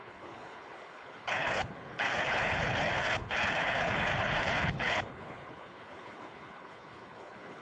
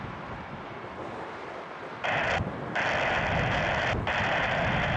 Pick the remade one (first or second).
first